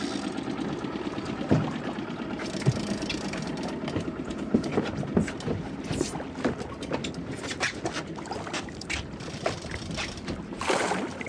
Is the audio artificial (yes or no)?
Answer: no